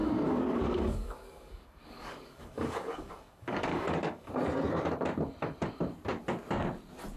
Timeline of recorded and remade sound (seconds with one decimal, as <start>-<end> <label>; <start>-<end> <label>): 0.0-4.3 remade; 4.3-7.2 recorded